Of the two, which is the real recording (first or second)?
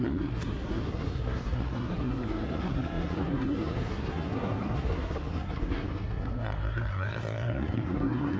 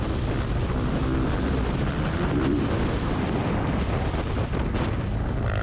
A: second